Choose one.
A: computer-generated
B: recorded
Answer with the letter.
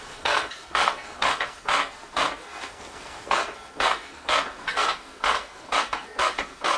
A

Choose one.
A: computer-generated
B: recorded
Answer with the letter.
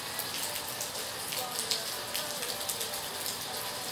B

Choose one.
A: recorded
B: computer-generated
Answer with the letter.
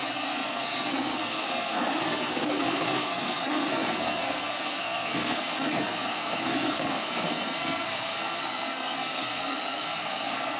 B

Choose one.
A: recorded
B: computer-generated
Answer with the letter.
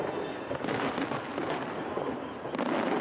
A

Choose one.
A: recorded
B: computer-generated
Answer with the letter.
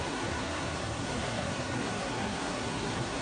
B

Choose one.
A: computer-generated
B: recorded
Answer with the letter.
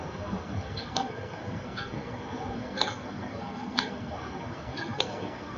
A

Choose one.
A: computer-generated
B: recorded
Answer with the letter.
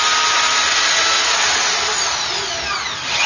B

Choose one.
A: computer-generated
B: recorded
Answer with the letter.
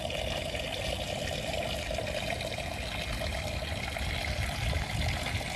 B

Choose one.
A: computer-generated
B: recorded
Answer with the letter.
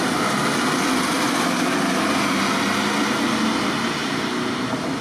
B